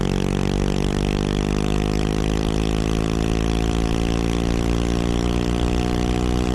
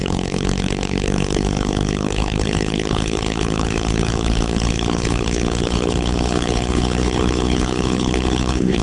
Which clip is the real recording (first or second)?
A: first